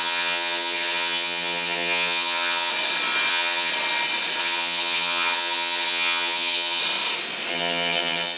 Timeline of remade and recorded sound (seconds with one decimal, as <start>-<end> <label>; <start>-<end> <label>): 0.0-2.7 remade; 2.7-3.3 recorded; 3.3-3.7 remade; 3.7-4.4 recorded; 4.4-6.8 remade; 6.8-7.5 recorded; 7.5-8.4 remade